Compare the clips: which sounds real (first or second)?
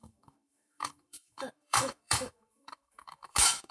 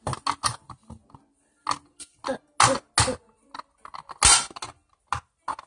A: second